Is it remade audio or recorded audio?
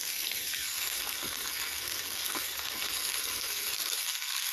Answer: remade